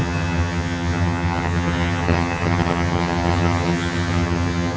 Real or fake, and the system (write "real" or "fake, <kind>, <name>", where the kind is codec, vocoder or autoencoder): fake, vocoder, HiFi-GAN